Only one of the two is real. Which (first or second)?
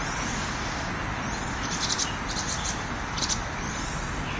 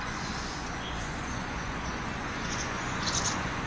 first